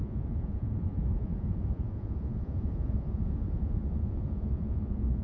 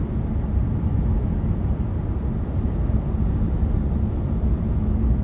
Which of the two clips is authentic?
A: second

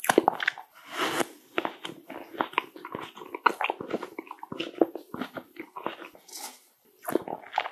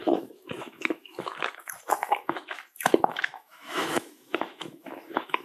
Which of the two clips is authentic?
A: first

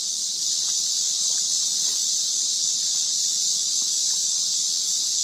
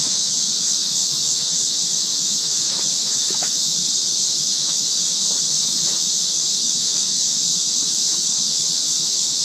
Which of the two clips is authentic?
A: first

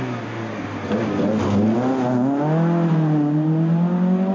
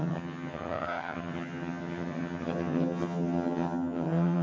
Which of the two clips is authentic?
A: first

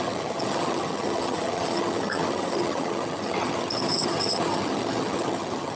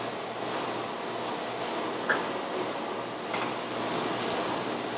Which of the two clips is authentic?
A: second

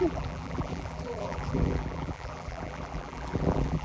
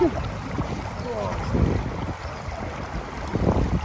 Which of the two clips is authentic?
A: second